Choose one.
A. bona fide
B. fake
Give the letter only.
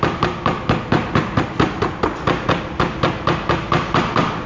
A